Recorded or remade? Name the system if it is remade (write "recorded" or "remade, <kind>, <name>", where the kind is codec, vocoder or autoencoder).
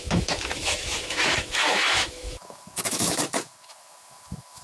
remade, autoencoder, DAC-VAE